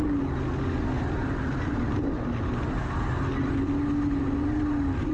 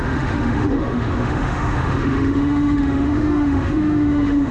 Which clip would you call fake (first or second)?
second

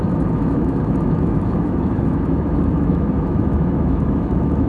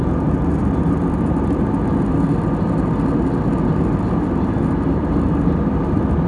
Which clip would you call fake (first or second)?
first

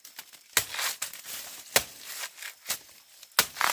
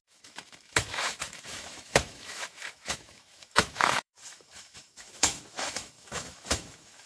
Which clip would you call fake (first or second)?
second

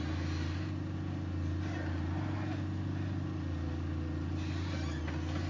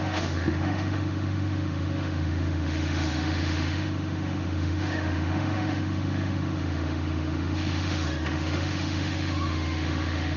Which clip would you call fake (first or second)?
second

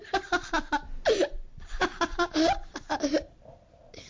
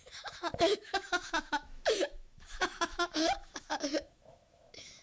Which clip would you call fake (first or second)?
second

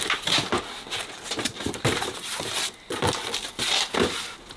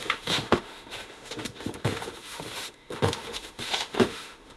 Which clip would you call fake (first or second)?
second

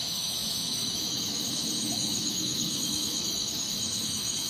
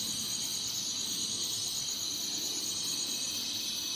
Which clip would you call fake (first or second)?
first